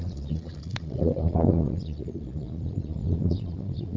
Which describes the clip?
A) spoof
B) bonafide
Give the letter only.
A